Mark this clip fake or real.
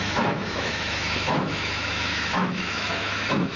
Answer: fake